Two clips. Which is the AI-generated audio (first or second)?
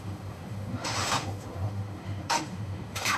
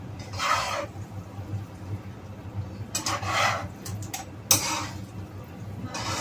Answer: first